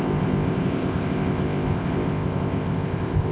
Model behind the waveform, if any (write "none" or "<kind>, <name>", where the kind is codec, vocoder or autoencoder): codec, ZipCodec